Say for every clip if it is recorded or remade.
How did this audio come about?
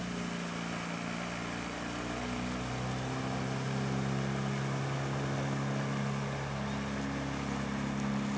recorded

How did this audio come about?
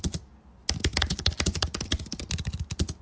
recorded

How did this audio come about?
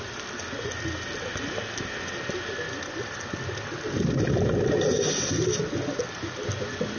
recorded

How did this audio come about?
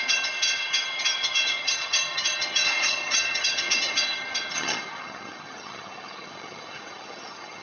remade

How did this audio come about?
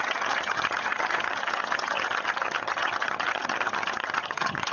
remade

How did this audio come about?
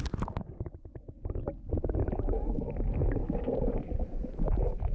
recorded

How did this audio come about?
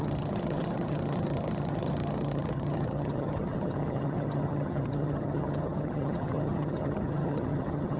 remade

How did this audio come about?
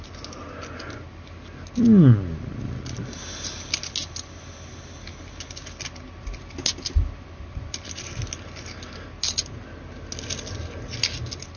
recorded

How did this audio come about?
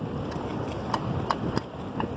recorded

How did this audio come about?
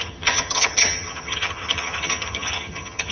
remade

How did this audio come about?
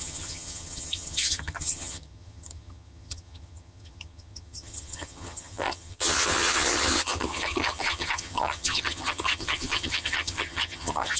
remade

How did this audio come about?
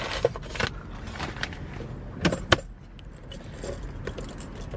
recorded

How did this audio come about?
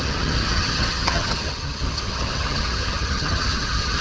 remade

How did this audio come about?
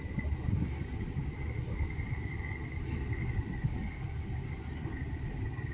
recorded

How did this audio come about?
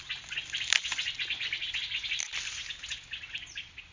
recorded